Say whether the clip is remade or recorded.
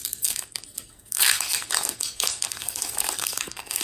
remade